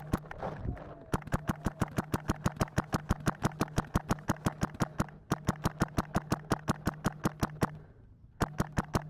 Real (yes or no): yes